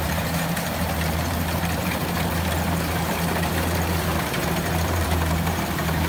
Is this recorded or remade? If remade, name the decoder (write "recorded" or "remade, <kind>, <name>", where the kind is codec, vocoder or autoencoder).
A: remade, vocoder, BigVGAN v2